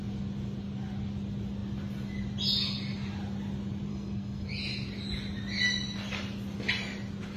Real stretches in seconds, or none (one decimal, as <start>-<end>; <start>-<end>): 0.0-3.9; 4.5-7.4